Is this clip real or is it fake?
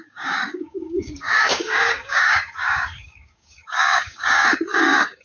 fake